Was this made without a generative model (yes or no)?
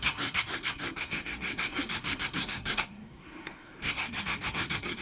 no